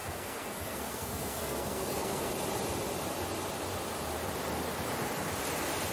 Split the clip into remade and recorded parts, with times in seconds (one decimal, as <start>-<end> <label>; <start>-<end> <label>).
0.0-2.3 remade; 2.3-5.9 recorded